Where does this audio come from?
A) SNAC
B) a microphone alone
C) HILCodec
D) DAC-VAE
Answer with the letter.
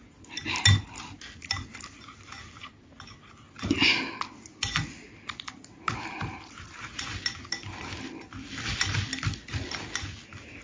B